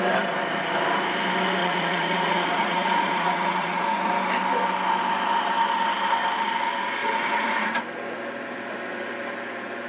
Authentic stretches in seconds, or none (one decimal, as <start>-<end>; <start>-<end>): 0.0-1.6; 4.1-7.0; 7.8-9.9